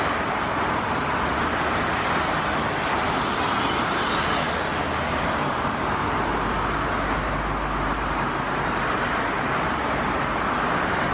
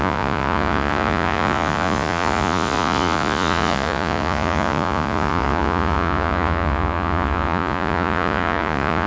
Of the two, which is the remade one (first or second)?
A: second